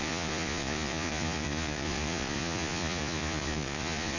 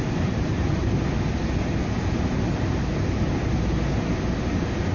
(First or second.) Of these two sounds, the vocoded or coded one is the first